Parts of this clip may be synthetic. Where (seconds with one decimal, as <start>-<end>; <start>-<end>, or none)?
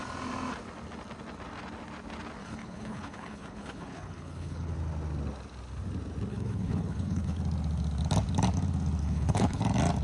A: 2.4-4.7; 6.3-7.4; 9.0-9.6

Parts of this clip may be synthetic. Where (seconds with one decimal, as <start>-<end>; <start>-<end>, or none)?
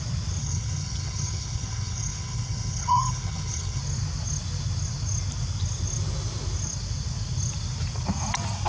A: 0.4-3.8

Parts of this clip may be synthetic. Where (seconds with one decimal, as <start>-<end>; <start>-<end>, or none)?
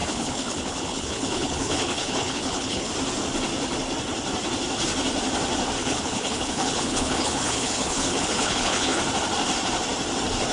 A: 0.0-2.9; 5.8-9.0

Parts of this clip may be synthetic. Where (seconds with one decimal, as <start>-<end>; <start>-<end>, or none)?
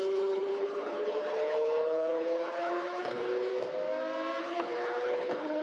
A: 0.0-3.5; 4.4-5.6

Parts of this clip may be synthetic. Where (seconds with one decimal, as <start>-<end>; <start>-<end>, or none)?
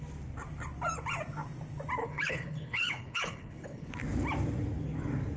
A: 2.0-3.9